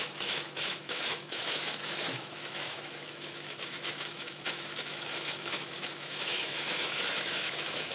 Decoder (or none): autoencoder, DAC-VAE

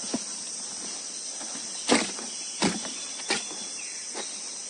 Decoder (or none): none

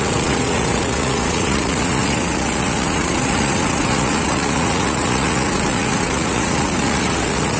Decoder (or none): vocoder, Vocos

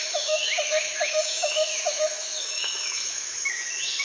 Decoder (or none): autoencoder, DAC-VAE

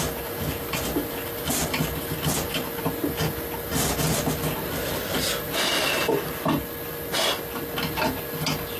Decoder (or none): none